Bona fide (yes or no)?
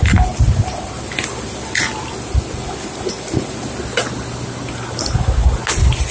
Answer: yes